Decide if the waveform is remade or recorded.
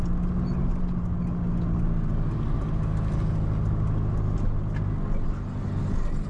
recorded